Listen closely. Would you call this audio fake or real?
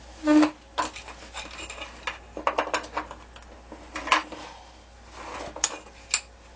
real